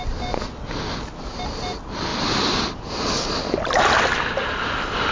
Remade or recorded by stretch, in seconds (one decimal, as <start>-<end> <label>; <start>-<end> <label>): 0.0-5.1 recorded